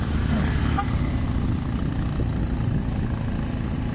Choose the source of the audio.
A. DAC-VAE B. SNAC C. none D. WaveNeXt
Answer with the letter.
C